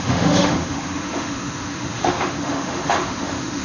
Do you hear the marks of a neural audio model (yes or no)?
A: yes